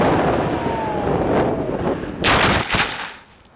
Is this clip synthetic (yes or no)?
no